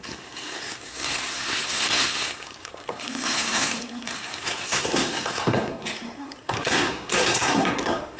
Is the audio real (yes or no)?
no